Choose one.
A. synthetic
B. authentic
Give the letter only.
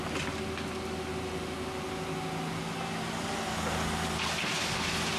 B